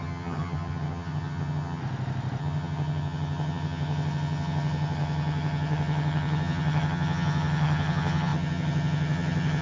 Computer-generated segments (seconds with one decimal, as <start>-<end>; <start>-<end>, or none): 0.0-1.8; 2.4-9.6